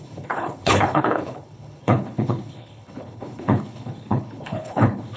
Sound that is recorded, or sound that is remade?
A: remade